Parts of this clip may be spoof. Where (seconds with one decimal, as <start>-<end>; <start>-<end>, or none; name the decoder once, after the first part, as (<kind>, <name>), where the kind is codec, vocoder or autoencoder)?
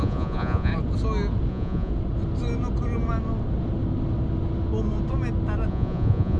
0.0-0.7 (vocoder, Vocos); 1.5-1.9; 5.7-6.4